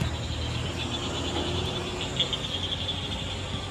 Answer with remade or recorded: recorded